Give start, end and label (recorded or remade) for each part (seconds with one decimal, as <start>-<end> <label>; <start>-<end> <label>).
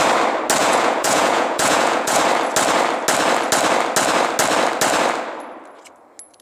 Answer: 0.0-0.6 recorded; 0.6-2.2 remade; 2.2-6.4 recorded